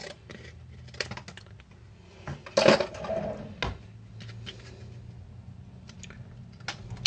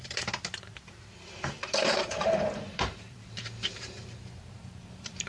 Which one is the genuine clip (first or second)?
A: first